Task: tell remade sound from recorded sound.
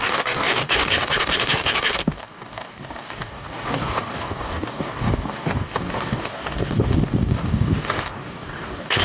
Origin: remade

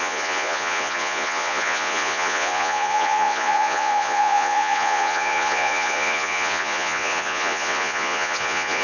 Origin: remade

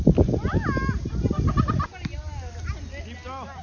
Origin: recorded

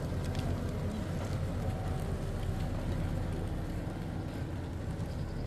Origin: recorded